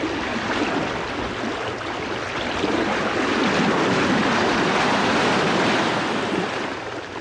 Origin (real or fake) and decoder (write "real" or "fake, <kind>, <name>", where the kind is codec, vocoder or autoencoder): real